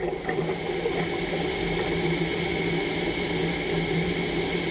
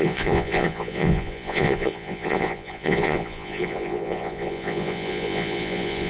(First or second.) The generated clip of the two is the second